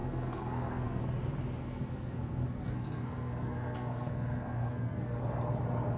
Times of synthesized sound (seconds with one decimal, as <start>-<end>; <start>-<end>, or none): 0.0-1.0; 1.6-5.2